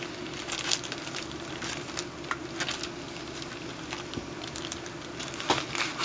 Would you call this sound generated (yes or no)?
no